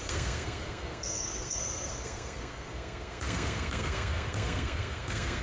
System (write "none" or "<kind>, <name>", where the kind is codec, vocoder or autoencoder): codec, SNAC